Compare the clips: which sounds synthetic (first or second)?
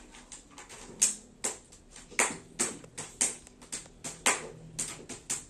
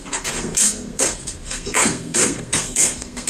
second